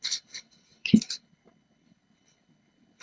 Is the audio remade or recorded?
remade